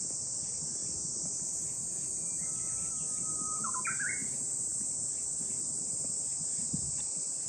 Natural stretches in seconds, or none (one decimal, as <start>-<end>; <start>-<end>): 0.0-0.8; 1.4-4.2; 6.7-7.5